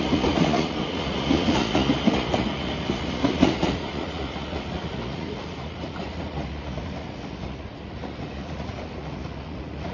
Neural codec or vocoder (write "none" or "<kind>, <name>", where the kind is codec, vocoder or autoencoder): vocoder, Vocos